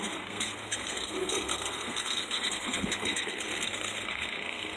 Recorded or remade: remade